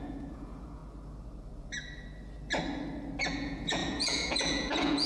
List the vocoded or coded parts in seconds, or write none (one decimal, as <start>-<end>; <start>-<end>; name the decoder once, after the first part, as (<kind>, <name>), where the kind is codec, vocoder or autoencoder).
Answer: 0.0-0.8 (vocoder, Vocos); 3.2-5.1